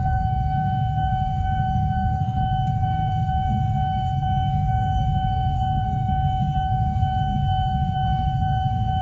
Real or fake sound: fake